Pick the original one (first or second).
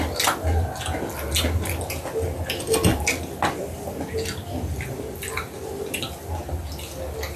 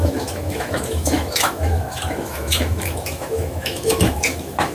first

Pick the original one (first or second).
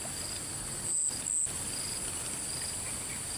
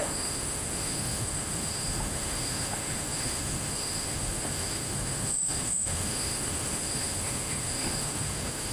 first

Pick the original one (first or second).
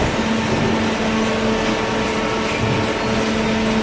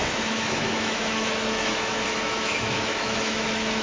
first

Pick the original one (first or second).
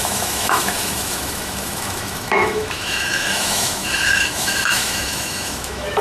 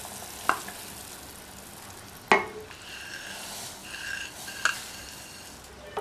second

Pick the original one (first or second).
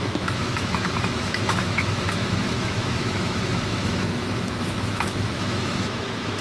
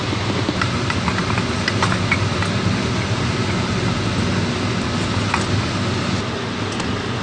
second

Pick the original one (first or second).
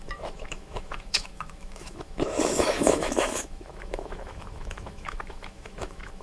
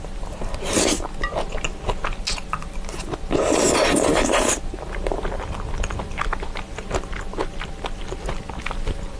second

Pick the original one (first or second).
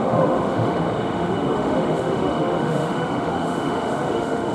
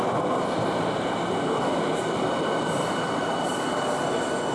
second